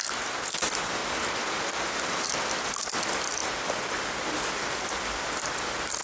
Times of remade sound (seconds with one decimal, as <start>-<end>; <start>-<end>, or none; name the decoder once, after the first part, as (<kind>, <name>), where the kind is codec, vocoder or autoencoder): 0.0-1.0 (vocoder, BigVGAN v2); 3.0-6.0